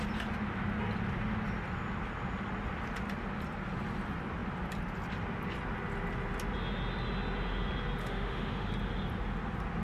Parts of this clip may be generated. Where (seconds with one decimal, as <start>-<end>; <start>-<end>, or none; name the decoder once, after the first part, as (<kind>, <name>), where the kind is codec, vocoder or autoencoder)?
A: 8.0-8.7 (autoencoder, DAC-VAE)